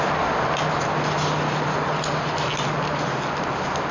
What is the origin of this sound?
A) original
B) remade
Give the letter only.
A